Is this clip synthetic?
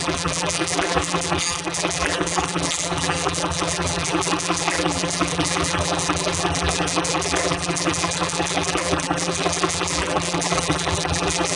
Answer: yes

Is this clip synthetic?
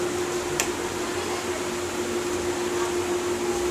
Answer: no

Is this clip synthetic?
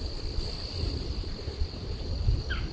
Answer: yes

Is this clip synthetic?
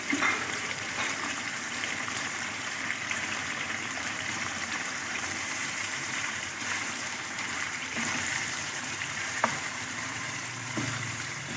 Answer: yes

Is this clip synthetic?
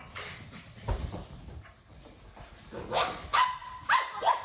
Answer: yes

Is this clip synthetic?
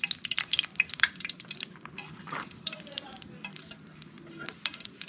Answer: yes